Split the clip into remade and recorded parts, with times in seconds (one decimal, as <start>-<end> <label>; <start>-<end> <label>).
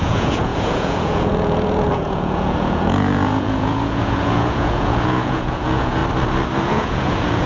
0.0-6.0 remade; 6.0-6.6 recorded; 6.6-7.5 remade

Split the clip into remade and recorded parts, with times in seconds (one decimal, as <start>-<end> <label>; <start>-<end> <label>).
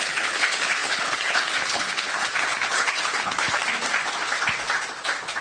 0.0-3.6 remade; 3.6-5.4 recorded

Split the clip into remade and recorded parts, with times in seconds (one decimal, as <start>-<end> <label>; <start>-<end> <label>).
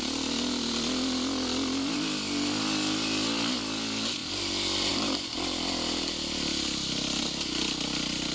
0.0-8.3 recorded